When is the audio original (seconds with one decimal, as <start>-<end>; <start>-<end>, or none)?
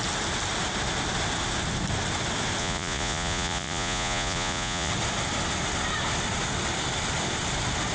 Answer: 0.0-2.6; 4.9-7.9